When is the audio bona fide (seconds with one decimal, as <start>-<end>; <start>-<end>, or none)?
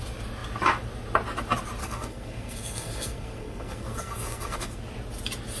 0.0-1.8; 4.8-5.6